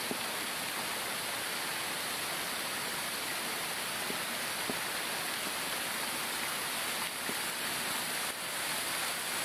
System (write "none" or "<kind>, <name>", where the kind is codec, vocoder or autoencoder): none